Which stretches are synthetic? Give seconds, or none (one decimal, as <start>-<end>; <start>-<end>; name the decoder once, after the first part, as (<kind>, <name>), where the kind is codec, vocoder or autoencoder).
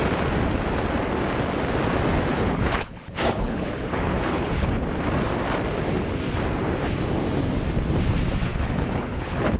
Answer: 2.3-4.9 (codec, HILCodec); 8.5-9.6